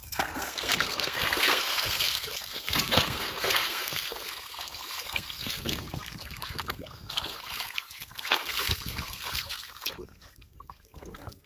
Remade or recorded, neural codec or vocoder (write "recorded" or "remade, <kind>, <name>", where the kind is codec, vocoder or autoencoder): remade, codec, SNAC